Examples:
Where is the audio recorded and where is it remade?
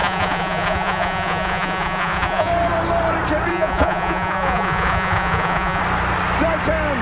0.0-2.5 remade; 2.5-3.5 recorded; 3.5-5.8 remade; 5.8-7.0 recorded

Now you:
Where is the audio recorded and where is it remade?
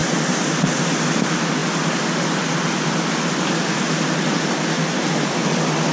0.0-5.9 recorded